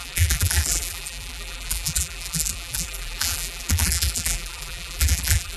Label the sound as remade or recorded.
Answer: remade